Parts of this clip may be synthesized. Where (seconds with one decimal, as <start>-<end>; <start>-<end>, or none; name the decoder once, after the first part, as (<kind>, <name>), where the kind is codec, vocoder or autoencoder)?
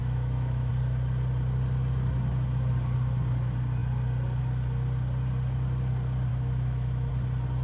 0.0-0.7 (autoencoder, DAC-VAE); 6.3-7.1